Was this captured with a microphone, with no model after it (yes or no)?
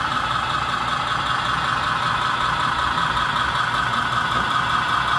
no